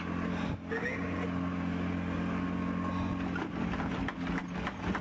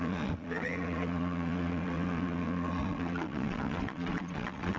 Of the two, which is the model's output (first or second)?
second